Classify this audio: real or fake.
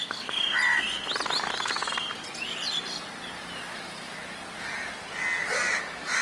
real